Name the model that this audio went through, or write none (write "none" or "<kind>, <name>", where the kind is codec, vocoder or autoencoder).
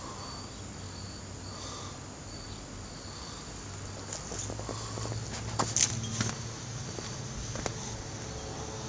none